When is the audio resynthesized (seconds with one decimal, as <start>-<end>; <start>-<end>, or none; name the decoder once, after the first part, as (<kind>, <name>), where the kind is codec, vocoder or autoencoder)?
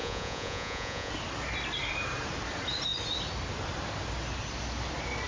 0.0-1.1 (vocoder, Vocos)